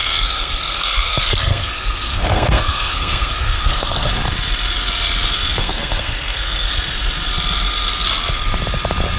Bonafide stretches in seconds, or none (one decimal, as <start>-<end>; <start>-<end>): 4.1-5.6; 6.7-9.2